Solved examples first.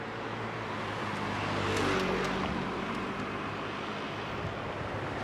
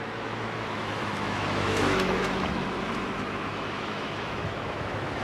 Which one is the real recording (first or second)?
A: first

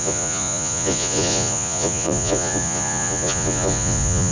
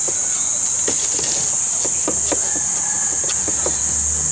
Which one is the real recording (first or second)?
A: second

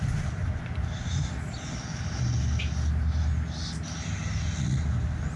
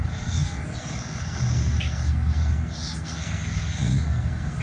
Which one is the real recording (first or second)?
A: first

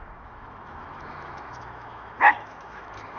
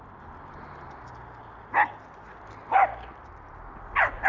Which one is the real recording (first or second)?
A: second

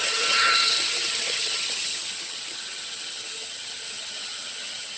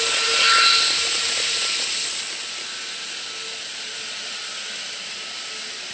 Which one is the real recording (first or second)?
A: second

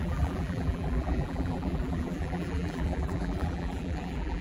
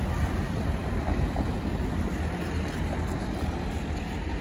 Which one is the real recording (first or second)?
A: second